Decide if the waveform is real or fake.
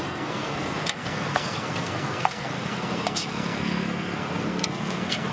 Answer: fake